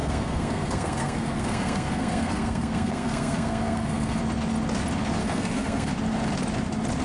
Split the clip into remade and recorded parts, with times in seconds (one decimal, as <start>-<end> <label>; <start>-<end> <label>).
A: 0.0-4.2 remade; 4.2-5.2 recorded; 5.2-5.9 remade; 5.9-7.0 recorded